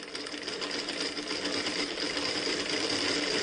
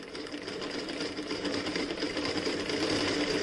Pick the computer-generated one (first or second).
second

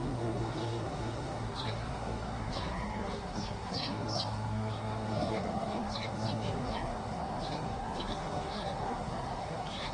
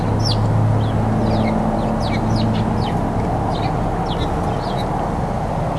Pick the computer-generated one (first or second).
first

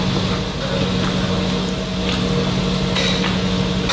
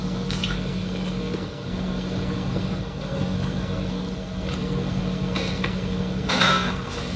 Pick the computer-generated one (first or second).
second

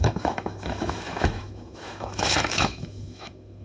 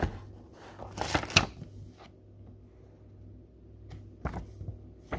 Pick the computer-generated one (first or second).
first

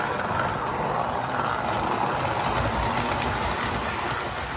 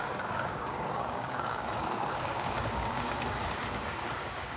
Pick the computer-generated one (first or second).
second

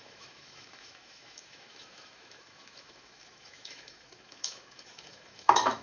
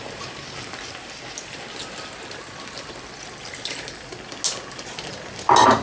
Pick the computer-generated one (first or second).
first